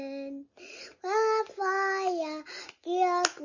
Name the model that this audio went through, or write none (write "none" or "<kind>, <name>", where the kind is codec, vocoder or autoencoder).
none